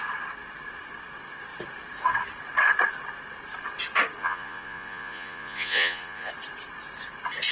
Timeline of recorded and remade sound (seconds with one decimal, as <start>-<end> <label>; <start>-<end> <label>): 0.0-4.2 recorded; 4.2-6.3 remade; 6.3-7.5 recorded